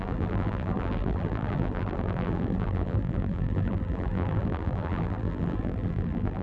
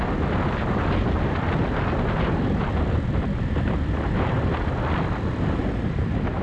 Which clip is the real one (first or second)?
second